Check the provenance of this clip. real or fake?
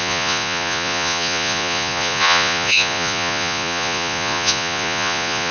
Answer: fake